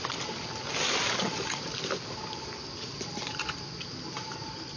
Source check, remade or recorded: recorded